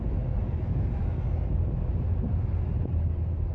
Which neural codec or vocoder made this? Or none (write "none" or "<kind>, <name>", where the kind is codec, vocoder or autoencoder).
none